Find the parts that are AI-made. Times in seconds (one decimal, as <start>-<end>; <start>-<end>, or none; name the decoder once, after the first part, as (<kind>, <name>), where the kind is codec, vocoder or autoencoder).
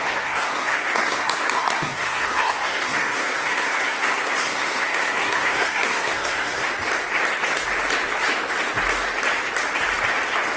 0.0-6.7 (codec, SNAC)